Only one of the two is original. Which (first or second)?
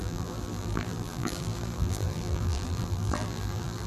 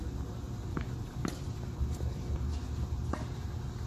second